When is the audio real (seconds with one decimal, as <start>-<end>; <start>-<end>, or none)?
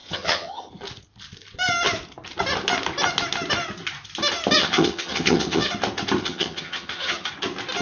0.7-4.6; 5.7-6.2; 7.3-7.8